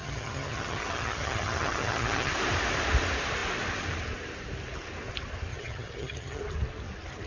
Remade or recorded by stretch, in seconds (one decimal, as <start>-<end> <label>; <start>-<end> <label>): 0.0-2.3 remade; 2.3-5.5 recorded; 5.5-6.4 remade; 6.4-7.3 recorded